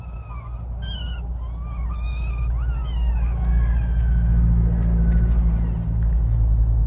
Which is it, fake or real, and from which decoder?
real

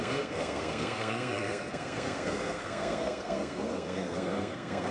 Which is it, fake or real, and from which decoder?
fake, codec, SNAC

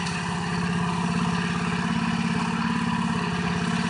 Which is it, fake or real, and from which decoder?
real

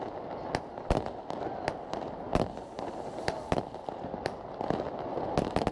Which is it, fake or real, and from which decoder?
real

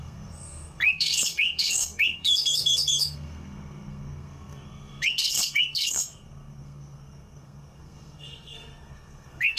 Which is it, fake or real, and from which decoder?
fake, codec, SNAC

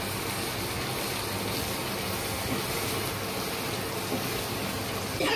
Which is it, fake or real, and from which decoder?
real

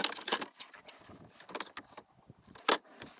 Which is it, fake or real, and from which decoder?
real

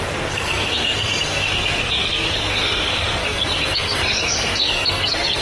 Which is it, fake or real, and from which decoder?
fake, codec, SNAC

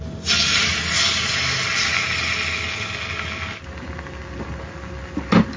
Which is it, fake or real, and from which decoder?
real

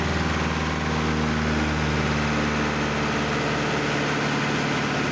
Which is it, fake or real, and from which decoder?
real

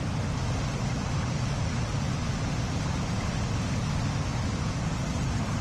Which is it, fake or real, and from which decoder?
real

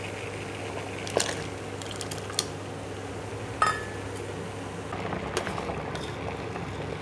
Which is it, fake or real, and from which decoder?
real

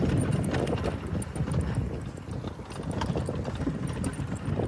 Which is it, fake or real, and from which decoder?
real